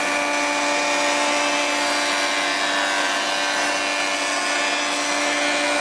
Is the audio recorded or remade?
recorded